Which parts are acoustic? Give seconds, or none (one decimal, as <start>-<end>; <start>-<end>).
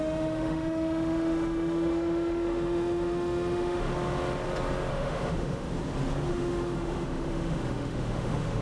3.9-4.9; 5.7-6.3